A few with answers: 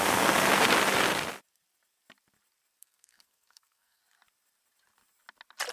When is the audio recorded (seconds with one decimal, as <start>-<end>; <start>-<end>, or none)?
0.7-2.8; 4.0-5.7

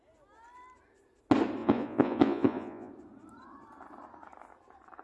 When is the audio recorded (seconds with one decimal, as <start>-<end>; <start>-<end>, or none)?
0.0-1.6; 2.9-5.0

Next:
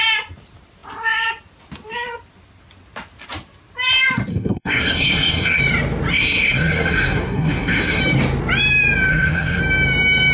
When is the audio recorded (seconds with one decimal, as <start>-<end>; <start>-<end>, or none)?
0.0-4.3; 5.6-6.1; 8.0-9.1; 9.6-10.3

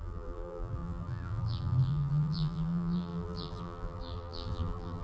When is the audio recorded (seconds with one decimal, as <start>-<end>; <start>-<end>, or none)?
none

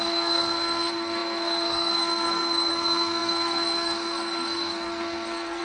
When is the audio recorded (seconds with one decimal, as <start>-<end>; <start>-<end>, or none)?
none

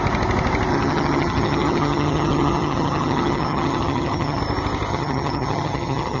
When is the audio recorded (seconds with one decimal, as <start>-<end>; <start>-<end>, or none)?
0.0-0.7; 4.4-4.9